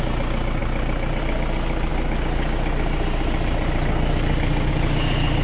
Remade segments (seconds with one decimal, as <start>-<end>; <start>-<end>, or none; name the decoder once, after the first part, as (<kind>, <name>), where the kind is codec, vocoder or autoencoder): none